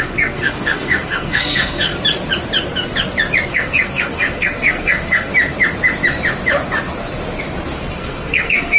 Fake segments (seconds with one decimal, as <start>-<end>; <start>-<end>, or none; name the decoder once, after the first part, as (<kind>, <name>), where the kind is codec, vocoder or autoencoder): 0.0-1.9 (codec, SNAC); 3.5-5.3; 7.8-8.8